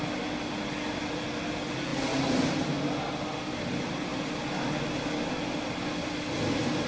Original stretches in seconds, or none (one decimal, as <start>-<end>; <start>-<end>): 0.0-6.9

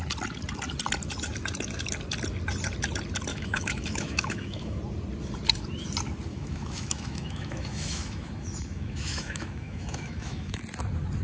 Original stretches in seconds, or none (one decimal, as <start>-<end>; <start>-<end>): 0.0-3.3; 4.8-6.3; 10.6-11.2

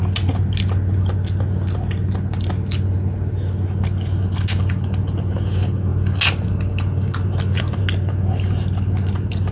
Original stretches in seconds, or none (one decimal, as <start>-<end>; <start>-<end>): 0.0-9.5

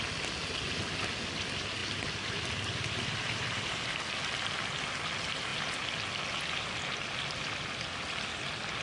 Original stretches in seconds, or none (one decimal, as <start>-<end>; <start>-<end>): 0.0-8.8